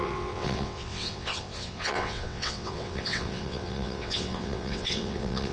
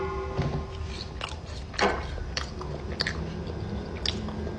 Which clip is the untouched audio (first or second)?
second